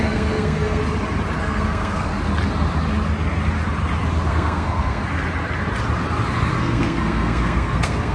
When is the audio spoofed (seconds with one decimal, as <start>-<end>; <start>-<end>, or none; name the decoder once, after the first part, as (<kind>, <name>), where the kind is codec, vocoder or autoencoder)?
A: 0.0-0.8 (codec, SNAC); 1.4-2.1; 4.3-5.0; 6.5-8.1

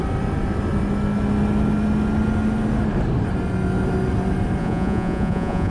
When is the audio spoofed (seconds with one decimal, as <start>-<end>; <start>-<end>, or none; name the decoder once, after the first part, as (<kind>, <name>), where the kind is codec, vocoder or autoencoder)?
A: 4.6-5.7 (vocoder, Vocos)